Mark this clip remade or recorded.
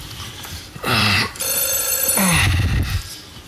remade